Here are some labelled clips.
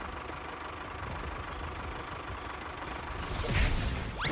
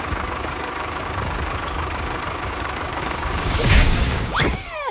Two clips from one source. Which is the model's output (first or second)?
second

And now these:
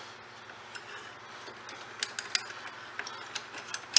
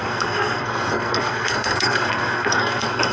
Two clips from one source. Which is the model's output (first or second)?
second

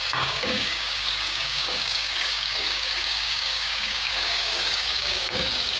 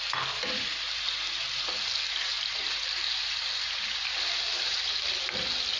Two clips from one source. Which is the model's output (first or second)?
first